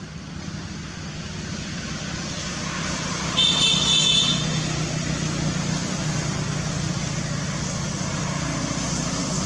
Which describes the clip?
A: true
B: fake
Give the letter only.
A